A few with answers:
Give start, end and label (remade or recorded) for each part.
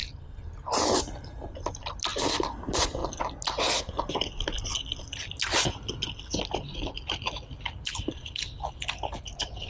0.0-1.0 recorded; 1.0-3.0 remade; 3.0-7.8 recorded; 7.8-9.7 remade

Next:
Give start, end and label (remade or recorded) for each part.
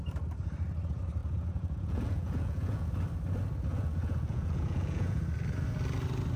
0.0-1.2 recorded; 1.2-2.9 remade; 2.9-3.7 recorded; 3.7-5.2 remade; 5.2-6.4 recorded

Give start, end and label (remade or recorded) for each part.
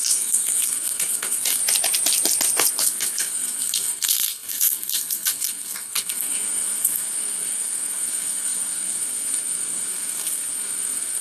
0.0-1.6 remade; 1.6-2.7 recorded; 2.7-11.2 remade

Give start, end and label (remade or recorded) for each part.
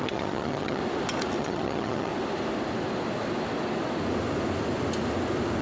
0.0-0.8 remade; 0.8-1.4 recorded; 1.4-2.1 remade; 2.1-5.6 recorded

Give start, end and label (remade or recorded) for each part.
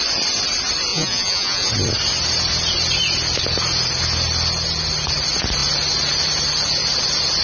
0.0-0.9 recorded; 0.9-1.7 remade; 1.7-7.4 recorded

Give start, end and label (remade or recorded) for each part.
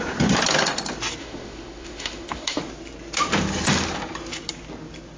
0.0-1.2 recorded; 1.2-2.6 remade; 2.6-5.2 recorded